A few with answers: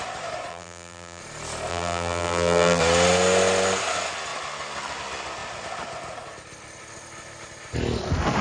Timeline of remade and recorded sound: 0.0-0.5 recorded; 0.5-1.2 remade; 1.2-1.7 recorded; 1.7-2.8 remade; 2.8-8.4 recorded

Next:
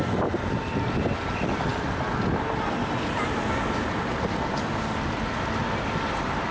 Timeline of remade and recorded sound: 0.0-6.5 recorded

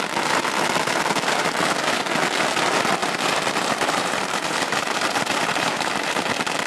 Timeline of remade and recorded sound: 0.0-3.0 recorded; 3.0-6.3 remade; 6.3-6.7 recorded

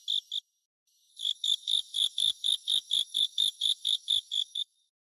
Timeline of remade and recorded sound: 0.0-1.1 recorded; 1.1-5.1 remade

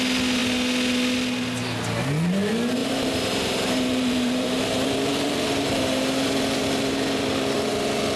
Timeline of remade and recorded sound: 0.0-2.8 recorded; 2.8-7.7 remade; 7.7-8.2 recorded

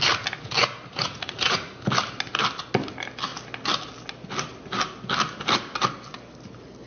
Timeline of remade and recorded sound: 0.0-0.9 recorded; 0.9-1.7 remade; 1.7-6.9 recorded